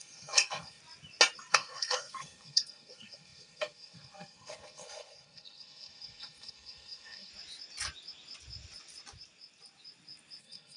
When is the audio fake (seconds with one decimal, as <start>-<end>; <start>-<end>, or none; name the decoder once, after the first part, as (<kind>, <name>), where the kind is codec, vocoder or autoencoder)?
0.0-0.8 (codec, SNAC); 1.5-7.3; 10.4-10.8